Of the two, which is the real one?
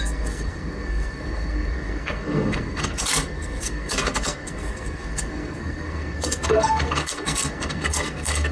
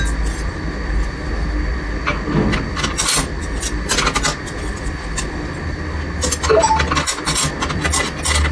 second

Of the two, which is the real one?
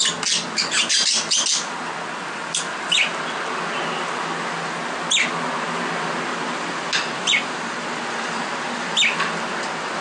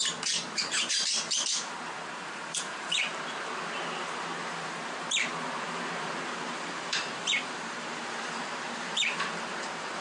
first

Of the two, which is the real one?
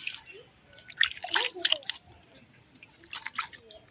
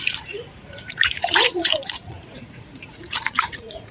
first